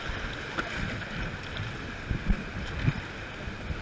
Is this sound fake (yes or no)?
no